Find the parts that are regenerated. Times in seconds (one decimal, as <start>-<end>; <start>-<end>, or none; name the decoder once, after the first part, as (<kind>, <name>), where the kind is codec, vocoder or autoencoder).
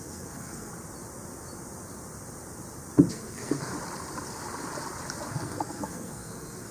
0.0-0.7 (codec, SNAC); 3.1-3.7; 5.3-6.7